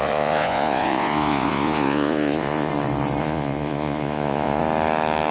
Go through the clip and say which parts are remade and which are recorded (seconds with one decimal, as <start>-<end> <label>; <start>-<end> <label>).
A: 0.0-2.7 remade; 2.7-3.2 recorded; 3.2-4.6 remade; 4.6-5.3 recorded